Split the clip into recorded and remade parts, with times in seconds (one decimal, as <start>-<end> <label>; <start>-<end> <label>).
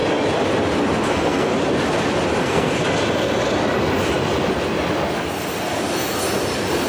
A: 0.0-1.1 recorded; 1.1-1.5 remade; 1.5-2.4 recorded; 2.4-2.8 remade; 2.8-6.9 recorded